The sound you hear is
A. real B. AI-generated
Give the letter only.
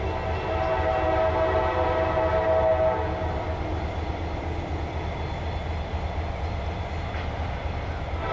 A